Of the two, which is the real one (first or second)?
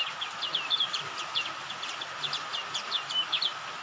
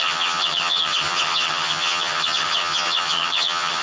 first